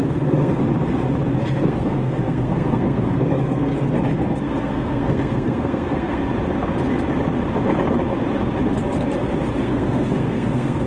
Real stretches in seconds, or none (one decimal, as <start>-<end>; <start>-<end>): 0.6-1.4; 3.7-4.2; 6.2-9.6